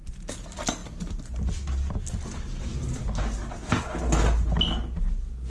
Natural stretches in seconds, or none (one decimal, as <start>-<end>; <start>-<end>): 0.0-5.5